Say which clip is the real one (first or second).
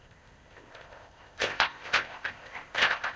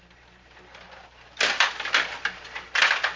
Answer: second